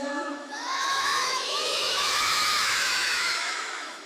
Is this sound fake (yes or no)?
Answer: yes